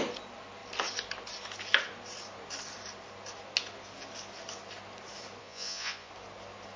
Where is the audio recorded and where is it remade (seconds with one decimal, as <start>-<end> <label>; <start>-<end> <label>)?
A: 0.0-5.4 recorded; 5.4-6.1 remade; 6.1-6.8 recorded

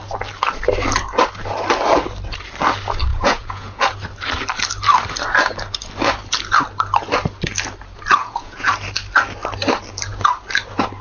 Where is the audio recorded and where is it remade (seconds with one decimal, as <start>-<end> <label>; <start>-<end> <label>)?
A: 0.0-3.1 recorded; 3.1-3.8 remade; 3.8-8.2 recorded; 8.2-8.7 remade; 8.7-11.0 recorded

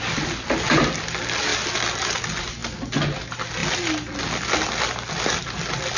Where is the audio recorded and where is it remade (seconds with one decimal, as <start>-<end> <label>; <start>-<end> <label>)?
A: 0.0-6.0 recorded

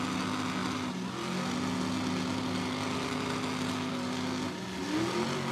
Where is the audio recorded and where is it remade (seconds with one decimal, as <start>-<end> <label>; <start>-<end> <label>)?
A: 0.0-5.5 recorded

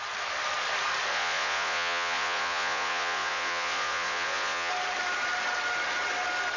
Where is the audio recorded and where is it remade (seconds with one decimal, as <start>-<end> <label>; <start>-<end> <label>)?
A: 0.0-1.1 recorded; 1.1-4.7 remade; 4.7-6.6 recorded

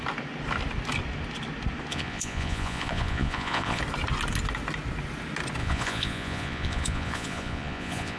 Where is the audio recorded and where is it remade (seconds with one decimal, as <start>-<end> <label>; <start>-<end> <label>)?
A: 0.0-1.9 recorded; 1.9-3.8 remade; 3.8-5.6 recorded; 5.6-8.2 remade

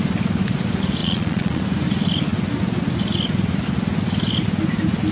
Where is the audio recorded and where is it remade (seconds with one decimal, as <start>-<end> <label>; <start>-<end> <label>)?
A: 0.0-1.0 recorded; 1.0-1.6 remade; 1.6-5.1 recorded

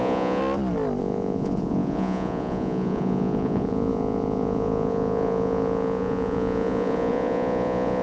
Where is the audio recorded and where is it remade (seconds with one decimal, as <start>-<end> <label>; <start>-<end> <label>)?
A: 0.0-0.4 remade; 0.4-1.0 recorded; 1.0-8.0 remade